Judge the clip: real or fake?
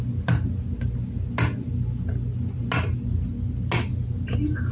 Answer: real